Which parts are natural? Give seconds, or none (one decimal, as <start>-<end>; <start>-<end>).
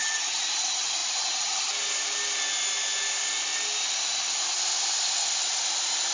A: 0.0-6.1